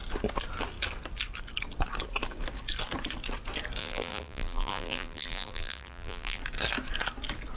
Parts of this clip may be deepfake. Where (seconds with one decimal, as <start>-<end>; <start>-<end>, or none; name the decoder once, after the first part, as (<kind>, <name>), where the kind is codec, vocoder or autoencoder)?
3.8-6.4 (vocoder, BigVGAN v2)